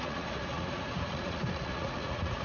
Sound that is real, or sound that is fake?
fake